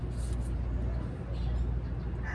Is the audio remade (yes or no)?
no